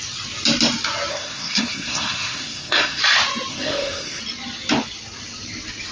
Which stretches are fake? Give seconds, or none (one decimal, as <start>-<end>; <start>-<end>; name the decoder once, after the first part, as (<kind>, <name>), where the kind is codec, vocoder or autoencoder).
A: 1.1-3.0 (codec, SNAC); 3.5-4.2

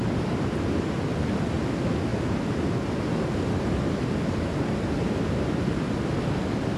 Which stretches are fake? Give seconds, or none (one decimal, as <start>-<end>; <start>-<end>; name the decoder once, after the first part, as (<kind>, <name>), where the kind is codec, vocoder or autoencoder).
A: none

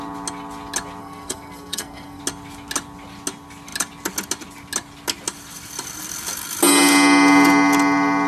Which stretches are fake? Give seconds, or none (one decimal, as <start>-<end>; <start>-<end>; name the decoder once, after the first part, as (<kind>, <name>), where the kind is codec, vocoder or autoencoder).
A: 1.0-2.2 (codec, SNAC)

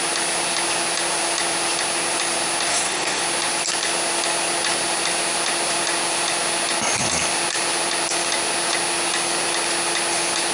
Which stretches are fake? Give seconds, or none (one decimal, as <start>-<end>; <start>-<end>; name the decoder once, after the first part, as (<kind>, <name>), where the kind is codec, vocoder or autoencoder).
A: 2.7-3.2 (codec, SNAC)

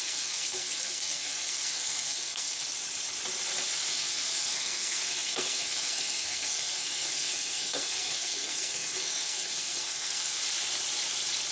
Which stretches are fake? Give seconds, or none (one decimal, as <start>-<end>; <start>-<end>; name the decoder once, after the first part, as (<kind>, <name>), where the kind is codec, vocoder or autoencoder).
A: 0.0-2.6 (codec, SNAC); 3.9-10.4

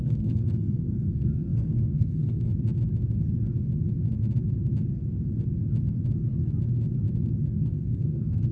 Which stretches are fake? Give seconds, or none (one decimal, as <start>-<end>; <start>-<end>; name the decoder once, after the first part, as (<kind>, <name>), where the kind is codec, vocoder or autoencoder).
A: 0.0-2.5 (codec, SNAC); 7.5-8.5

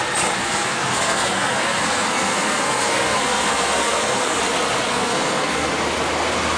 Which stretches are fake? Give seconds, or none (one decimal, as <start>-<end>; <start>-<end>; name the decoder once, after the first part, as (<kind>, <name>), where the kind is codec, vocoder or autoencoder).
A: 0.4-4.4 (codec, SNAC); 4.9-5.7

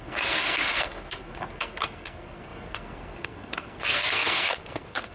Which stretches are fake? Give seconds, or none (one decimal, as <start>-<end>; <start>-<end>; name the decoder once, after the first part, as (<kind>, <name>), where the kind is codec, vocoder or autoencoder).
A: 0.0-5.1 (codec, SNAC)